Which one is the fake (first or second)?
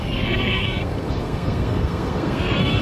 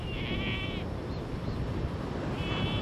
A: first